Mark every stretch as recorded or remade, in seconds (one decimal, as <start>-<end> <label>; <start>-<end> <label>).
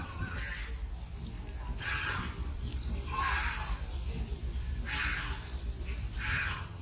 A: 0.0-0.4 remade; 0.4-1.8 recorded; 1.8-2.2 remade; 2.2-6.3 recorded; 6.3-6.8 remade